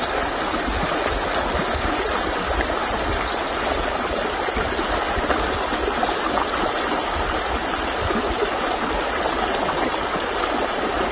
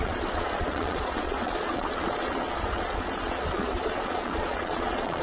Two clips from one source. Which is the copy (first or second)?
second